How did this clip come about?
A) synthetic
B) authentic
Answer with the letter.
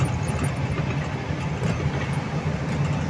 B